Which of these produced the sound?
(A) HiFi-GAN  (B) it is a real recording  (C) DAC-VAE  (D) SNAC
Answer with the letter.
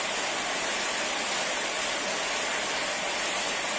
B